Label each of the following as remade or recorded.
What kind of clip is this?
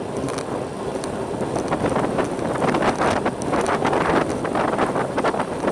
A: recorded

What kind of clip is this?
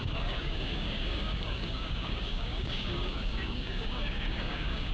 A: remade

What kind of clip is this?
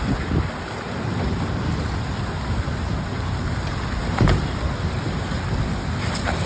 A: recorded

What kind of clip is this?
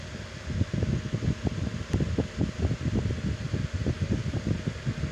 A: recorded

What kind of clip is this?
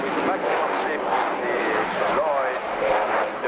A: recorded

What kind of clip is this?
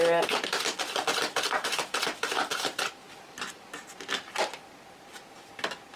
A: recorded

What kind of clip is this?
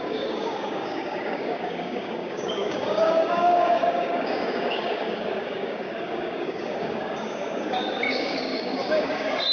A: remade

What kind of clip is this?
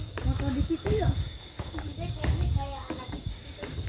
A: remade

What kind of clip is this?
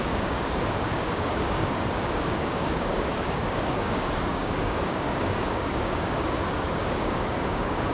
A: remade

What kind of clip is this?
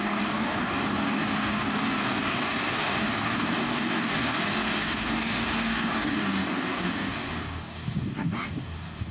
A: remade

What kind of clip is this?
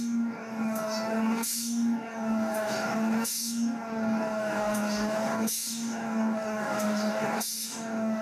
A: remade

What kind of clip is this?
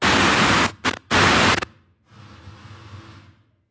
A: recorded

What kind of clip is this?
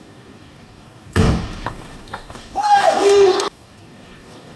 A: remade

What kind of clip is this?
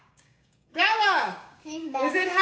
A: remade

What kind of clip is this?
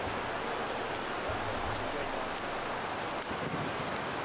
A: recorded